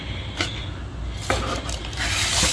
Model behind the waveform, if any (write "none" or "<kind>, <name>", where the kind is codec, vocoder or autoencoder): none